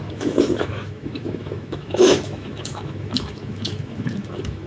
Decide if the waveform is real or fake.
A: fake